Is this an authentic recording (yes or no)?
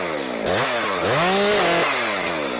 yes